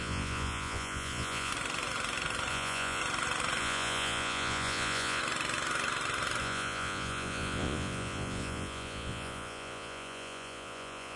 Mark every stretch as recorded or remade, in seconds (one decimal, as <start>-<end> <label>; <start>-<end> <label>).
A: 0.0-1.5 remade; 1.5-2.5 recorded; 2.5-3.0 remade; 3.0-3.6 recorded; 3.6-5.2 remade; 5.2-6.4 recorded; 6.4-11.2 remade